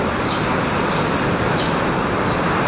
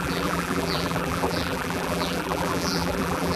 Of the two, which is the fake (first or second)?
second